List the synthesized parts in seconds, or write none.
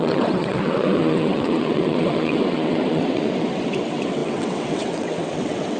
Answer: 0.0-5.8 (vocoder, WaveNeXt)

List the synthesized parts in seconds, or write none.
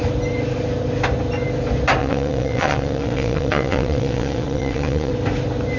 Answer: 2.0-5.1 (vocoder, WaveNeXt)